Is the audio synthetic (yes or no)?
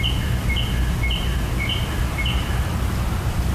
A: no